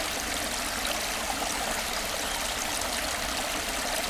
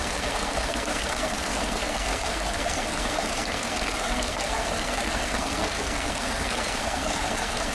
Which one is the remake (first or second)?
second